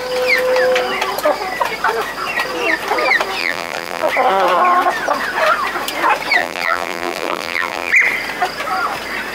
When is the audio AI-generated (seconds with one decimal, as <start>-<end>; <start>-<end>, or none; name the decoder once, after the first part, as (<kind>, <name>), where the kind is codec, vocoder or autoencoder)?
3.4-4.1 (vocoder, BigVGAN v2); 6.4-7.9